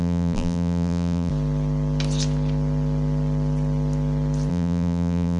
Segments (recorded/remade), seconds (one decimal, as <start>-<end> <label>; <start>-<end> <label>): 0.0-1.3 remade; 1.3-4.5 recorded; 4.5-5.4 remade